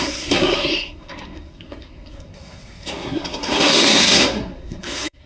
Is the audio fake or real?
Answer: fake